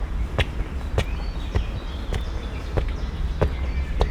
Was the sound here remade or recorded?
recorded